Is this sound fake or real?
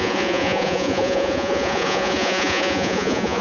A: fake